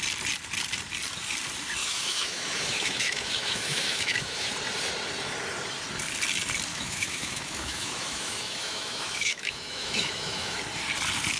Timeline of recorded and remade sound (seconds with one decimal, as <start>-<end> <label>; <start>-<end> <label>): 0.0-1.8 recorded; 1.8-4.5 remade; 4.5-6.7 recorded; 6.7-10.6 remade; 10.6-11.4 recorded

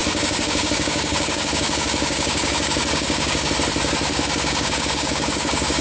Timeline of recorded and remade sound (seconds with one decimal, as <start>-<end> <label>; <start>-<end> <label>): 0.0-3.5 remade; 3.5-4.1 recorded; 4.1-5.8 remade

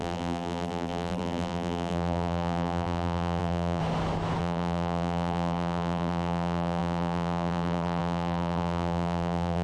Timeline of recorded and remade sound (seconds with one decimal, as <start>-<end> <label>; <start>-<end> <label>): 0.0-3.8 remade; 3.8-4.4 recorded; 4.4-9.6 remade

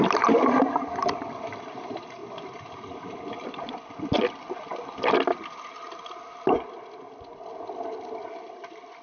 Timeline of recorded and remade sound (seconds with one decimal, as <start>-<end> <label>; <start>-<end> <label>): 0.0-9.0 recorded

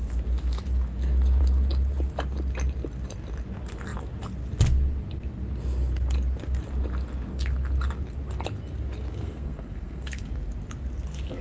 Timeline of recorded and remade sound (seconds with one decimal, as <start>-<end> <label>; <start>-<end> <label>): 0.0-9.1 recorded; 9.1-10.3 remade; 10.3-11.4 recorded

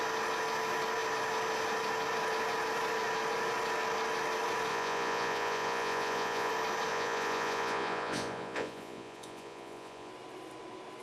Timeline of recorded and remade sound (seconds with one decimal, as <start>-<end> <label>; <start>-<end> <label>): 0.0-4.7 recorded; 4.7-6.5 remade; 6.5-6.9 recorded; 6.9-10.1 remade; 10.1-11.0 recorded

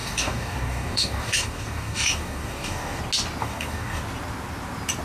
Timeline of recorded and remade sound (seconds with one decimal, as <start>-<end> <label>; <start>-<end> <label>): 0.0-3.0 remade; 3.0-3.4 recorded; 3.4-4.0 remade; 4.0-5.0 recorded